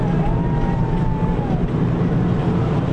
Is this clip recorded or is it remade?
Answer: recorded